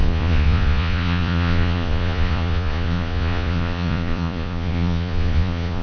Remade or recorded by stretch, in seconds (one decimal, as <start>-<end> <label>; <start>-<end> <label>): 0.0-5.8 remade

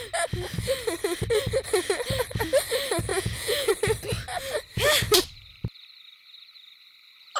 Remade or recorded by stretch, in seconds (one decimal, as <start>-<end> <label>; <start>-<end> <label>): 0.0-3.1 recorded; 3.1-3.7 remade; 3.7-7.4 recorded

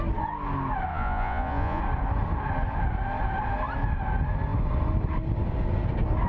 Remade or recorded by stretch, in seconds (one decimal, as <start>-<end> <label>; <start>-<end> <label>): 0.0-0.9 recorded; 0.9-1.8 remade; 1.8-6.3 recorded

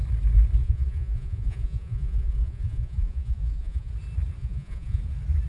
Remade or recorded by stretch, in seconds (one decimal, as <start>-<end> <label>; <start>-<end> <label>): 0.0-0.6 recorded; 0.6-3.9 remade; 3.9-4.4 recorded; 4.4-5.0 remade; 5.0-5.5 recorded

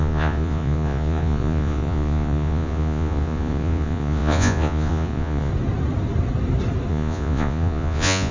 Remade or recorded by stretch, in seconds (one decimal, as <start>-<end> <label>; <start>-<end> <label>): 0.0-5.5 remade; 5.5-6.9 recorded; 6.9-8.3 remade

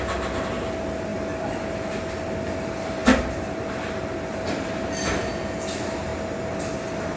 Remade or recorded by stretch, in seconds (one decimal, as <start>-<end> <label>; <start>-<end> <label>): 0.0-7.2 recorded

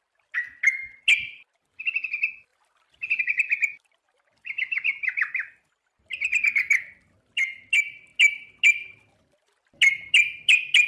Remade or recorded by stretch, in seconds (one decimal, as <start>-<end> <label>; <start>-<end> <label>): 0.0-10.9 recorded